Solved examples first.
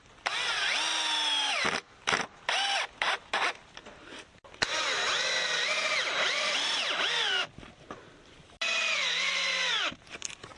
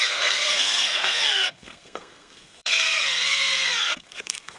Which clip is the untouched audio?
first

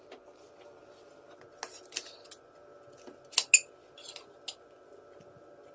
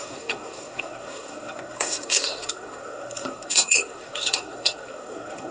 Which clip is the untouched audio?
first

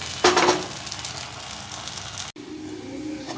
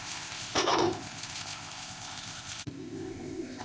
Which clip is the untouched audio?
first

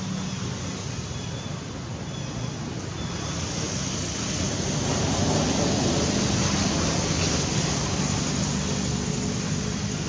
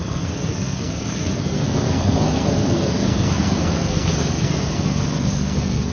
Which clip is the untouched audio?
first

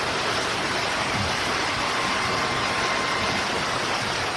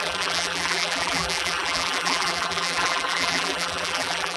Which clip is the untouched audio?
first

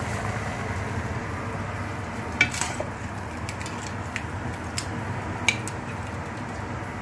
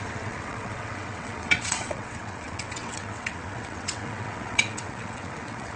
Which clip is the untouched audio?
first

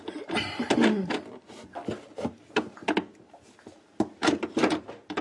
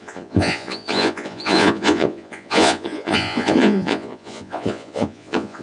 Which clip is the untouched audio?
first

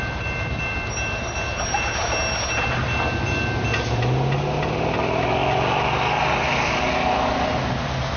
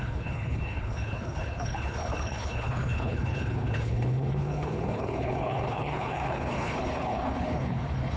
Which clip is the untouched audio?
first